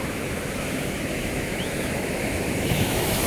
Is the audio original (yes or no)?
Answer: no